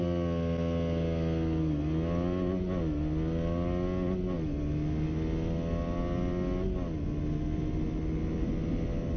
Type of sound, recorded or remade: recorded